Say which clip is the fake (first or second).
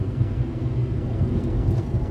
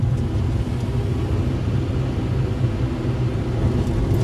first